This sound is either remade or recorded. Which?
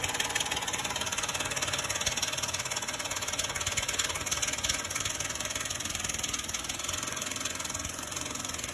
remade